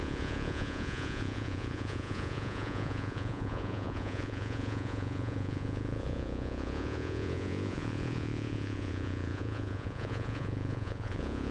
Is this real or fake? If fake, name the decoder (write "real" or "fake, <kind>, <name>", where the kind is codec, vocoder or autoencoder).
fake, vocoder, Vocos